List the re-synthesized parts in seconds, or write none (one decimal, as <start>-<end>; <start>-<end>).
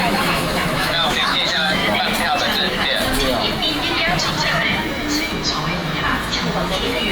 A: 0.0-1.8; 4.5-7.1